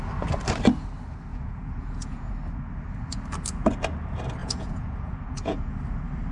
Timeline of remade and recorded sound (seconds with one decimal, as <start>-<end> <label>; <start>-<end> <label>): 0.0-1.3 recorded; 1.3-2.3 remade; 2.3-4.4 recorded; 4.4-5.7 remade; 5.7-6.3 recorded